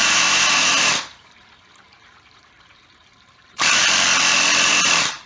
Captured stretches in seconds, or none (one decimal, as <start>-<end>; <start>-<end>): 3.8-4.7